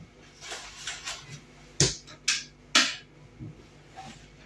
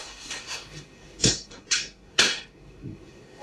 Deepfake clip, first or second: second